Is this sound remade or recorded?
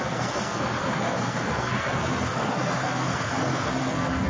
remade